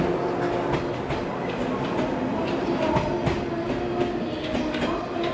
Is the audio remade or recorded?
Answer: recorded